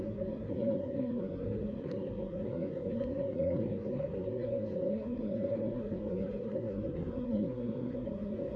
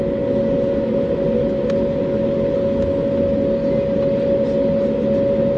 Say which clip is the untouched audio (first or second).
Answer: second